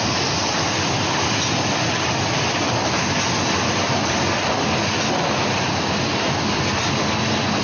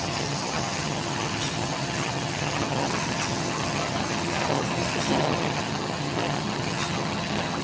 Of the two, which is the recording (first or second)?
first